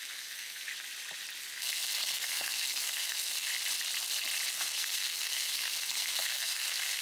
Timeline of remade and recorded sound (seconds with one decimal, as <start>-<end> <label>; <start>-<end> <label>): 0.0-0.7 remade; 0.7-1.4 recorded; 1.4-3.5 remade; 3.5-4.5 recorded; 4.5-7.0 remade